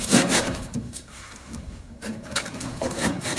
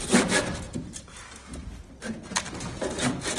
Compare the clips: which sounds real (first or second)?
second